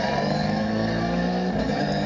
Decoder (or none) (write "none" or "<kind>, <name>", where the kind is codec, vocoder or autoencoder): codec, DAC